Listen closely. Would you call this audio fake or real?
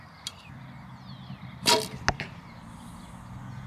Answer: real